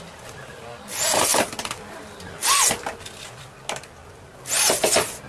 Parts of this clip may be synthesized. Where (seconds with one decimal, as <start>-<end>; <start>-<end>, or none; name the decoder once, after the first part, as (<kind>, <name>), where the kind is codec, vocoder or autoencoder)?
none